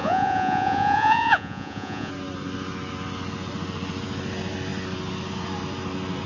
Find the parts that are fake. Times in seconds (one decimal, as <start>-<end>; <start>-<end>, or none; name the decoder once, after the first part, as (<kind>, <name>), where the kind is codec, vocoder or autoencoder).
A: 0.0-2.1 (vocoder, Vocos)